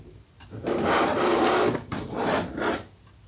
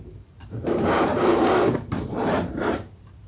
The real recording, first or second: first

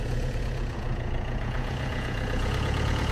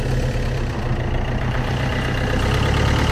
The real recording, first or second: second